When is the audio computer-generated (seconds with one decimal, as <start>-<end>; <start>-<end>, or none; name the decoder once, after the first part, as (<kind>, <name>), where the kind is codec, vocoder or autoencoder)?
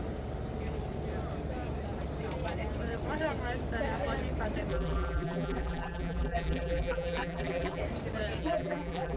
4.7-7.8 (vocoder, BigVGAN v2); 8.4-9.2